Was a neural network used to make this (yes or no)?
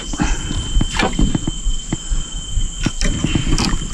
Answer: no